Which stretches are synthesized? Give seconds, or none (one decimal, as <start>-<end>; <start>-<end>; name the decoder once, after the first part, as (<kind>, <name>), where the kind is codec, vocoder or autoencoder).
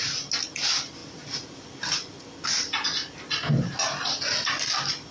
none